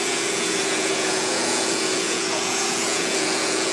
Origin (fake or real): fake